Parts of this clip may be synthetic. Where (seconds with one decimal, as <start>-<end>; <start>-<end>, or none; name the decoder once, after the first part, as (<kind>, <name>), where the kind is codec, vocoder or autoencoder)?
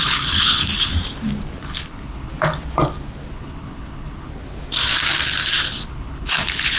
0.0-0.9 (codec, HILCodec); 1.6-2.3; 3.3-4.3; 5.7-6.8